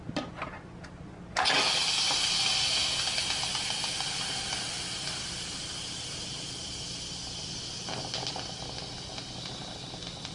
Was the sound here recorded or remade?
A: recorded